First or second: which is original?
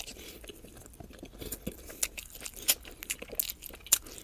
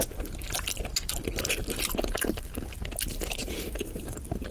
first